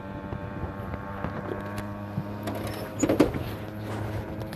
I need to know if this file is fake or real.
real